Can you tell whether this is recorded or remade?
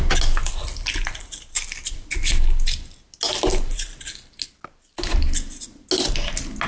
recorded